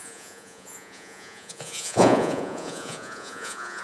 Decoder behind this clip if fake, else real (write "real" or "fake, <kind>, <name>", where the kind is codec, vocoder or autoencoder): fake, vocoder, Vocos